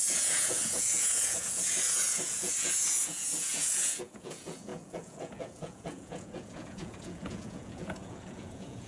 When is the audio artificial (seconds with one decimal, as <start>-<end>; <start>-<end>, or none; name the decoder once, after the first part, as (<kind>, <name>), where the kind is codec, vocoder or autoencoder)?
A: 0.0-8.9 (vocoder, Vocos)

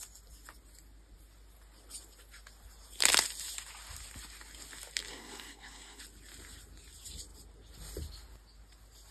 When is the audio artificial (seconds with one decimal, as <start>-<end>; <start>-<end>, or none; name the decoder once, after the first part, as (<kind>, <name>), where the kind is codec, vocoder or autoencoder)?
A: 5.1-6.0 (codec, SNAC)

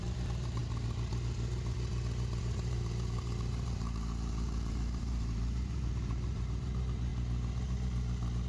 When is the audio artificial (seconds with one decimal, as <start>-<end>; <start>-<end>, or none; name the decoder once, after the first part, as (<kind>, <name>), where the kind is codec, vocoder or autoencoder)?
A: 0.0-0.6 (vocoder, BigVGAN v2); 2.4-7.1

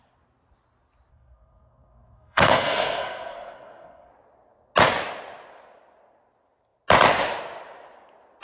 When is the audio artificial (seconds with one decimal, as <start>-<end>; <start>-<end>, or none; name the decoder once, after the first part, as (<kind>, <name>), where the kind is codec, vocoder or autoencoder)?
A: 1.1-4.1 (codec, SNAC)

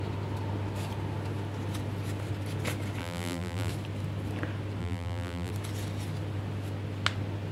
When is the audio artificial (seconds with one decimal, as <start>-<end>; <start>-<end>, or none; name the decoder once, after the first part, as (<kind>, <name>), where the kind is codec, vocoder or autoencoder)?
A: 3.0-3.7 (vocoder, BigVGAN v2); 4.8-5.5

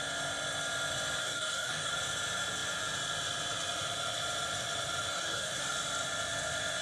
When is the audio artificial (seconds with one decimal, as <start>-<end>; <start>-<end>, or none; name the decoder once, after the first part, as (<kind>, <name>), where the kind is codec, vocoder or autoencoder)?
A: 1.2-1.9 (codec, DAC); 5.1-5.6